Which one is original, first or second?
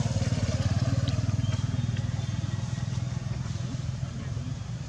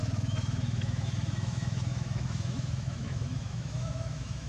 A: first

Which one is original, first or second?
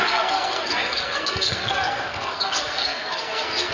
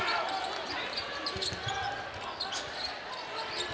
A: second